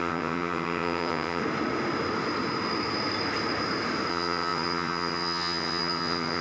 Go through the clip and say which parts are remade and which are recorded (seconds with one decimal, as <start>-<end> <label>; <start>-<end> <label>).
0.0-1.4 remade; 1.4-4.1 recorded; 4.1-6.4 remade